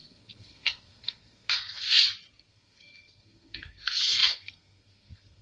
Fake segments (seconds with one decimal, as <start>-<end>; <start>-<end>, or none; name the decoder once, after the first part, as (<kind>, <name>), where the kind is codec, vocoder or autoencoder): 0.0-2.0 (codec, SNAC); 2.5-5.4